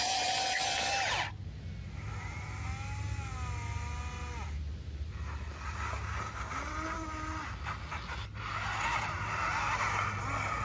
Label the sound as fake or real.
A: real